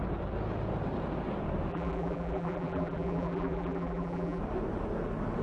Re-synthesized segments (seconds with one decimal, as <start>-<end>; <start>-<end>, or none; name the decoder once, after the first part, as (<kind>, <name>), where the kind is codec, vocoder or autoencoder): 1.7-4.4 (vocoder, BigVGAN v2)